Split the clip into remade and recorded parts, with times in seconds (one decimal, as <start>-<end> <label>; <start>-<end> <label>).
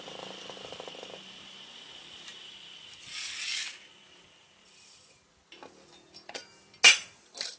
0.0-7.6 recorded